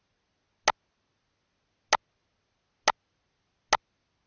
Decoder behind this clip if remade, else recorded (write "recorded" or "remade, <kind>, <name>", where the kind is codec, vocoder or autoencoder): recorded